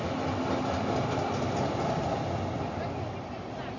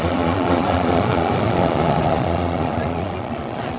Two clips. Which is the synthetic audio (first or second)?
second